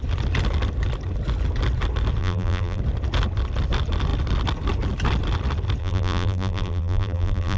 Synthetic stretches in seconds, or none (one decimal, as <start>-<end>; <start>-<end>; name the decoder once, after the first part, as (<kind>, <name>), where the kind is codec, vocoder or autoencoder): 2.2-2.8 (vocoder, BigVGAN v2); 5.8-7.6